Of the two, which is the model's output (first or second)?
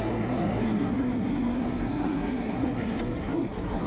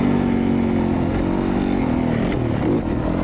first